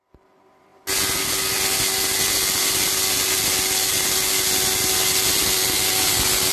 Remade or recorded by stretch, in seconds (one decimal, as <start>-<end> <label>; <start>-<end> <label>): 0.0-6.5 recorded

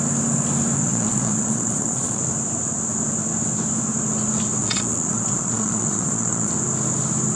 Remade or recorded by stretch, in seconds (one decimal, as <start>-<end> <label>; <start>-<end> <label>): 0.0-0.8 recorded; 0.8-2.2 remade; 2.2-4.6 recorded; 4.6-6.5 remade; 6.5-7.4 recorded

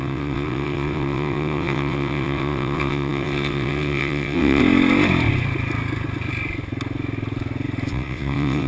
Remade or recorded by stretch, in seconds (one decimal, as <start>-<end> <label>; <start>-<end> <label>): 0.0-4.6 remade; 4.6-7.9 recorded; 7.9-8.7 remade

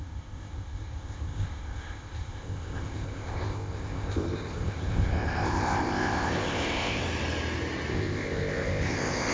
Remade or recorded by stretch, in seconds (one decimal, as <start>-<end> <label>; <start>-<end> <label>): 0.0-7.0 remade; 7.0-7.9 recorded; 7.9-9.3 remade

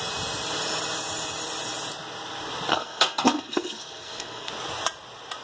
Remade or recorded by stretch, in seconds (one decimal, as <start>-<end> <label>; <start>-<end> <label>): 0.0-2.7 recorded; 2.7-4.5 remade; 4.5-5.4 recorded

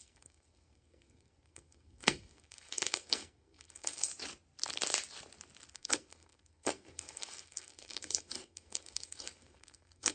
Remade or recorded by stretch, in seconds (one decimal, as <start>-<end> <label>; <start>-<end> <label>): 0.0-4.1 remade; 4.1-5.7 recorded; 5.7-10.1 remade